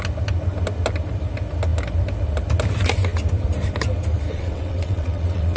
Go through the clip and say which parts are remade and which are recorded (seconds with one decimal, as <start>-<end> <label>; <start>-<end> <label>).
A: 0.0-4.3 recorded; 4.3-5.6 remade